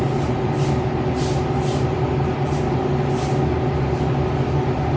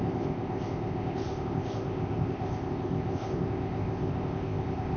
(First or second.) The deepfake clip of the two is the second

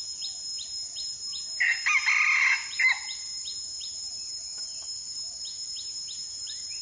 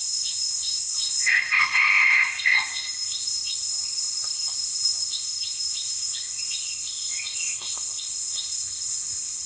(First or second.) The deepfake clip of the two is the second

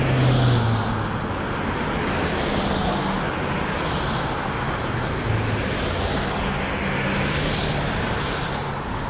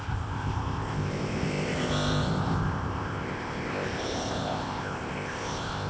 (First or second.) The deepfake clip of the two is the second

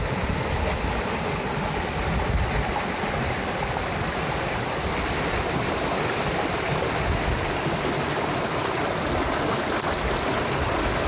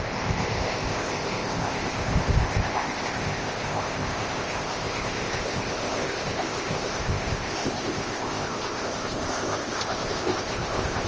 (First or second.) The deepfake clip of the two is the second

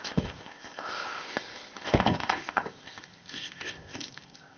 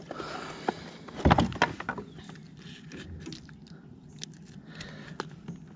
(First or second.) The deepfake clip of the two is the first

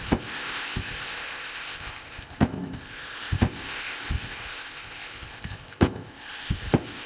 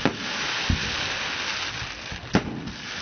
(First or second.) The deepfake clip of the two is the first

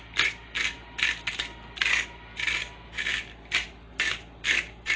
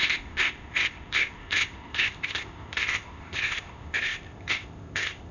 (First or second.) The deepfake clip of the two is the second